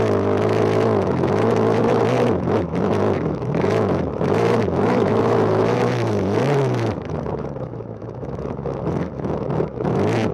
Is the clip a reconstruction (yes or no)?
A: yes